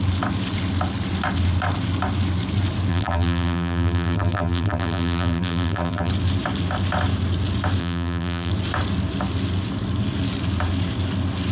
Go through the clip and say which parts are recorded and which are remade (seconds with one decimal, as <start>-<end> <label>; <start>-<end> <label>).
0.0-2.9 recorded; 2.9-6.1 remade; 6.1-7.8 recorded; 7.8-8.5 remade; 8.5-11.5 recorded